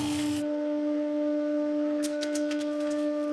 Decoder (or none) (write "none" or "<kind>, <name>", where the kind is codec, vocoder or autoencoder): codec, SNAC